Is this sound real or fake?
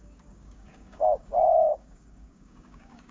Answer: fake